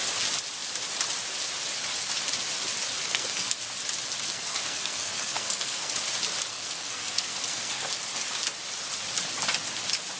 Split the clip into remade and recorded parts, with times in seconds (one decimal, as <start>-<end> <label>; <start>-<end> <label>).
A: 0.0-3.0 recorded; 3.0-3.6 remade; 3.6-4.3 recorded; 4.3-5.9 remade; 5.9-6.5 recorded; 6.5-7.9 remade; 7.9-10.2 recorded